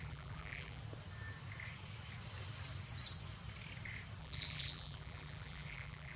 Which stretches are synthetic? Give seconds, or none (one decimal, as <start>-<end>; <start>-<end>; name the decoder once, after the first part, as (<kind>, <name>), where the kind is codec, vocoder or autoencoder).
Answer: 0.0-0.8 (vocoder, BigVGAN v2); 4.2-6.2